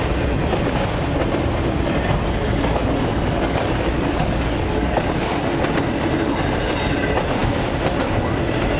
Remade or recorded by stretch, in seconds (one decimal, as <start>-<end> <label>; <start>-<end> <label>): 0.0-2.2 recorded; 2.2-5.1 remade; 5.1-8.8 recorded